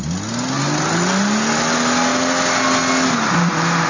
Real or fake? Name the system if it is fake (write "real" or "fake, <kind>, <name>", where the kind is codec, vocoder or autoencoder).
real